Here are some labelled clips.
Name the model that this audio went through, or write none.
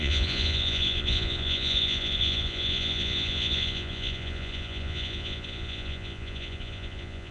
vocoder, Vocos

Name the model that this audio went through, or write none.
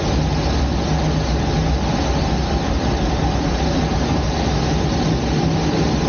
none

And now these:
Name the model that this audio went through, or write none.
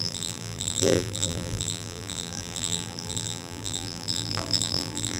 vocoder, BigVGAN v2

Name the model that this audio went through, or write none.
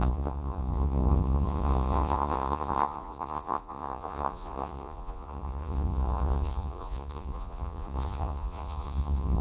vocoder, Vocos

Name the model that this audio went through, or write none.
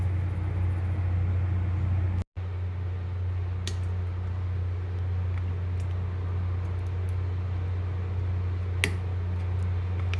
none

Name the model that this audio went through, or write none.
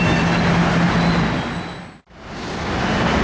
none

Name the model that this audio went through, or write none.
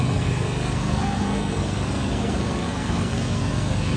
codec, SNAC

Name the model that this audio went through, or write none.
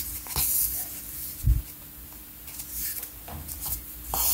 none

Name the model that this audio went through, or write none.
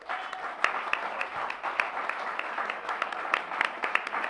none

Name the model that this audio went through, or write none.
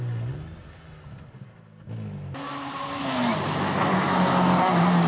none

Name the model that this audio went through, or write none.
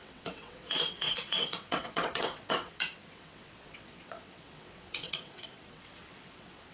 vocoder, WaveNeXt